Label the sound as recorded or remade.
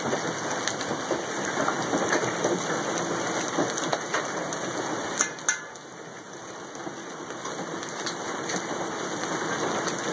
recorded